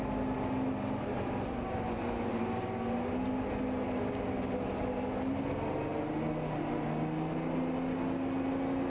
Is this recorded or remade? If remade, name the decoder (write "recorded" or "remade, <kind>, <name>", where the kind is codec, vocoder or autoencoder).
recorded